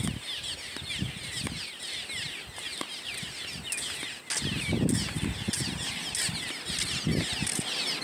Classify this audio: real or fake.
real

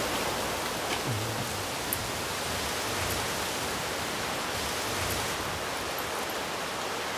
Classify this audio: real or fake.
real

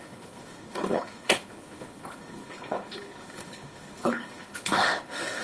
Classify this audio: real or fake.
fake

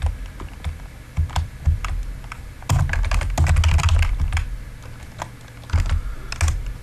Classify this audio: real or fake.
real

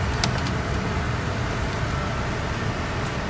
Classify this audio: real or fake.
real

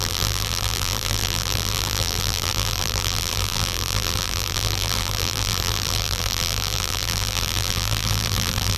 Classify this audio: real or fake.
fake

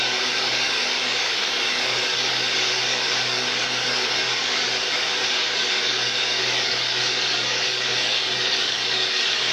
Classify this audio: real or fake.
fake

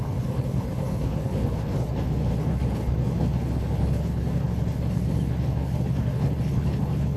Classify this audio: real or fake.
fake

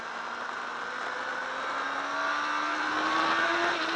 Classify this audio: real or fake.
real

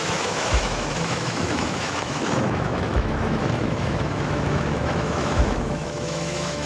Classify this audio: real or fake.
fake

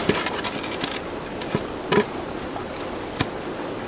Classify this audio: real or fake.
real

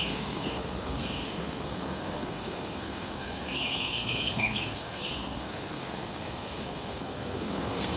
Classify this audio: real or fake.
fake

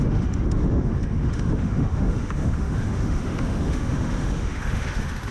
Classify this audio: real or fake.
fake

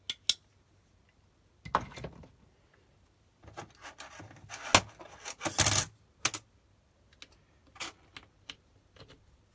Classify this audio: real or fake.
real